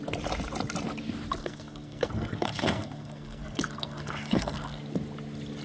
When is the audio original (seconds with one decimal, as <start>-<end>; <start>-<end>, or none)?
0.0-1.4; 4.8-5.6

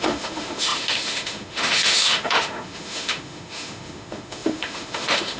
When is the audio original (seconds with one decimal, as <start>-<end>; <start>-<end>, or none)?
none